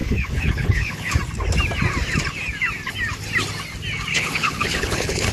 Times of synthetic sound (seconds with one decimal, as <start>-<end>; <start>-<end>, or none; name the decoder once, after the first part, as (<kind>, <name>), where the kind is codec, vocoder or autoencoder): 0.0-1.1 (codec, HILCodec); 4.1-5.3